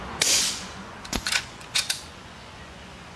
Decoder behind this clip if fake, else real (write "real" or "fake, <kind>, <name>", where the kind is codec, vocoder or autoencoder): fake, vocoder, Vocos